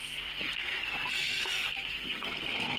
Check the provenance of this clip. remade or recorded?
remade